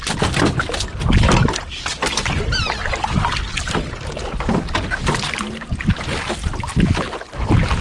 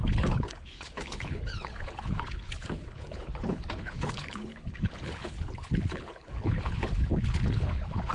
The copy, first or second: second